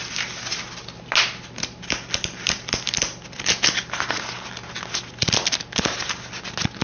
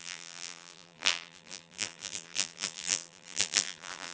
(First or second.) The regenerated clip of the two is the second